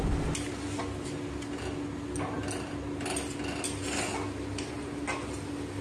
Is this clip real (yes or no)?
yes